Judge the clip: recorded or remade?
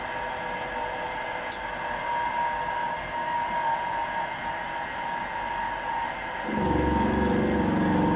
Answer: recorded